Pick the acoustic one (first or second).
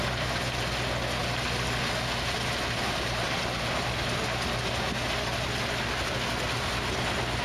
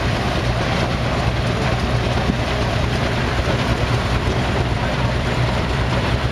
first